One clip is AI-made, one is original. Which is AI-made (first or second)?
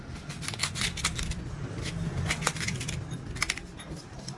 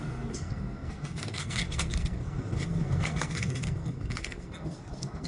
second